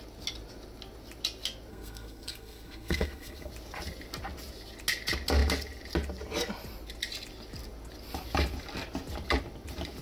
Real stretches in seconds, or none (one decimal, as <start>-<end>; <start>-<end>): 0.0-1.7; 3.5-10.0